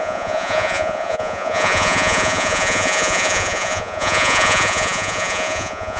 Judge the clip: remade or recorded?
remade